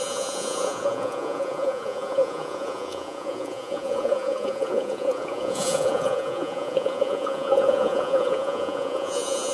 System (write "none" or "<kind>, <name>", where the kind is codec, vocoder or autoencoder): vocoder, Vocos